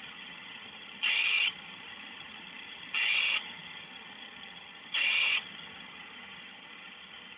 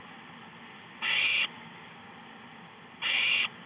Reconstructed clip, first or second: first